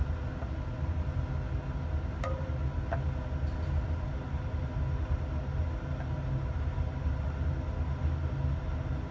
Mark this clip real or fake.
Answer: real